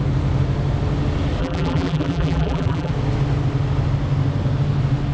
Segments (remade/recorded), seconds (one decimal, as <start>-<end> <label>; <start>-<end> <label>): 0.0-1.4 recorded; 1.4-2.9 remade; 2.9-5.1 recorded

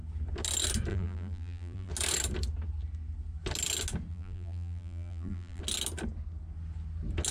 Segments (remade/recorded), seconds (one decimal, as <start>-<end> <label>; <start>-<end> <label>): 0.0-0.9 recorded; 0.9-1.9 remade; 1.9-4.1 recorded; 4.1-5.6 remade; 5.6-7.3 recorded

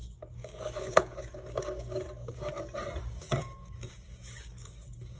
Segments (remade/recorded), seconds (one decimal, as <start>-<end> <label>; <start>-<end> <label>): 0.0-2.5 remade; 2.5-3.1 recorded; 3.1-5.2 remade

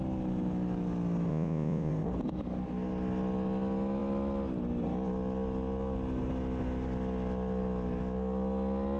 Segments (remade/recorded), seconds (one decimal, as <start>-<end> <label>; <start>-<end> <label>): 0.0-1.3 recorded; 1.3-1.9 remade; 1.9-9.0 recorded